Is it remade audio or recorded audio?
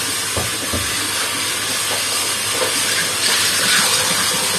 recorded